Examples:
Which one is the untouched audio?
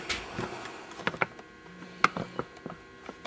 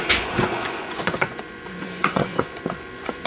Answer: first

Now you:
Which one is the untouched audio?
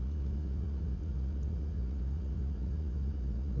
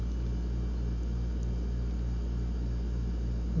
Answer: second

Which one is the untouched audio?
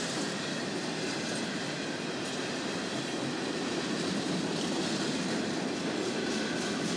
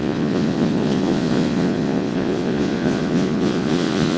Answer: first